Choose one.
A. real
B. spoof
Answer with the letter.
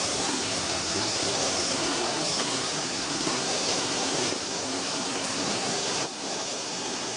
B